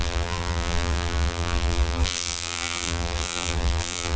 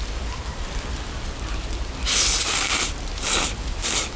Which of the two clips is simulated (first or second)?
first